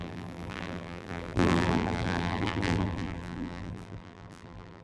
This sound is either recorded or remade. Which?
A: remade